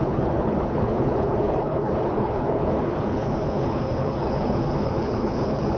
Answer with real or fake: fake